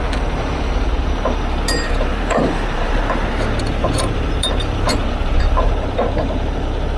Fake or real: fake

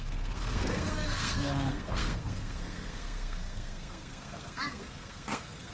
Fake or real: fake